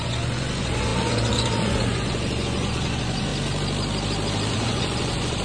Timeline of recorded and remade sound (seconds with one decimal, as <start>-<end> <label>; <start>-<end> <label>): 0.0-3.3 remade; 3.3-4.5 recorded; 4.5-5.4 remade